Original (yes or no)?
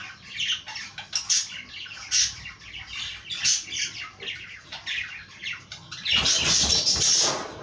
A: yes